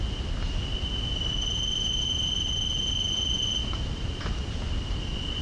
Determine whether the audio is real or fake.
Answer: real